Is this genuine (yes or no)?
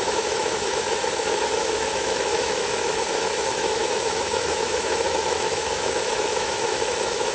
no